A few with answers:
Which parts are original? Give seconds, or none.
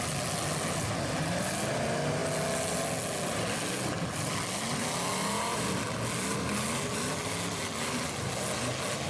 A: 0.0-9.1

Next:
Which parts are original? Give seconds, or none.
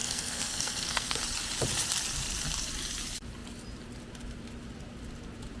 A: 1.2-5.6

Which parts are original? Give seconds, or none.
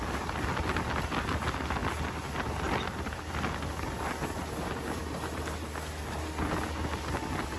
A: 0.0-7.6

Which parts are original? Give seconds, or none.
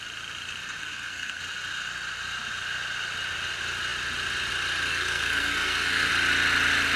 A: 0.0-0.8; 1.4-4.9; 6.1-7.0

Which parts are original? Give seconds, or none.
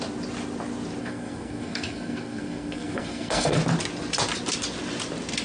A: 0.0-1.0; 3.6-5.4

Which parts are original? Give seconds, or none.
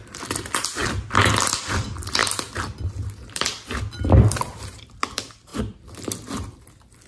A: 0.0-7.1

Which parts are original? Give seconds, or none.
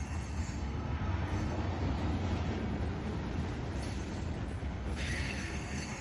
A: 0.0-0.4; 1.7-4.6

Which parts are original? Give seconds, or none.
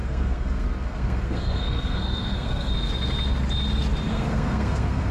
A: 2.7-4.1